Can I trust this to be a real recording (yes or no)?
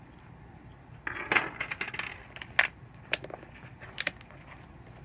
yes